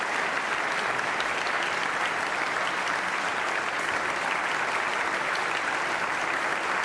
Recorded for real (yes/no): yes